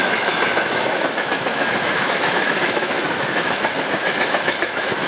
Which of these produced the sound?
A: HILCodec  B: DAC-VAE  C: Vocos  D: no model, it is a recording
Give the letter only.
B